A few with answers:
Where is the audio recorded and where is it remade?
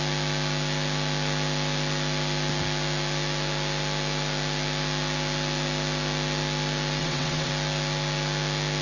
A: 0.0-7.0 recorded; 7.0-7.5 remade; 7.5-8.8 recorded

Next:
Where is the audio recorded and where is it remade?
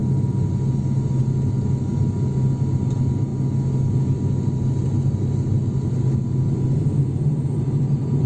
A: 0.0-8.3 recorded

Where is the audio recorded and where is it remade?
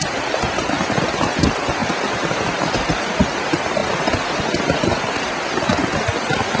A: 0.0-1.8 recorded; 1.8-3.1 remade; 3.1-6.6 recorded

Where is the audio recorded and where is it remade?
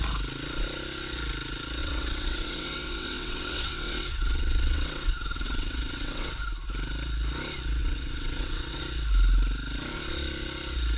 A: 0.0-1.8 recorded; 1.8-6.3 remade; 6.3-7.8 recorded; 7.8-8.8 remade; 8.8-11.0 recorded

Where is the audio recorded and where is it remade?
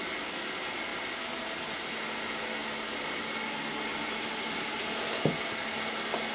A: 0.0-6.3 recorded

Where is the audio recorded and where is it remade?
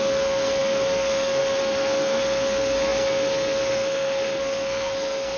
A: 0.0-5.4 remade